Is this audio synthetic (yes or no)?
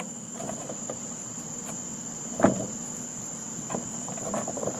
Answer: yes